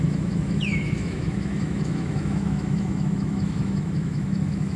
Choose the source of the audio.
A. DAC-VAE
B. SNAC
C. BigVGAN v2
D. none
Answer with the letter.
A